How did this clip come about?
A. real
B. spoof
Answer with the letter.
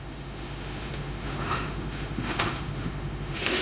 B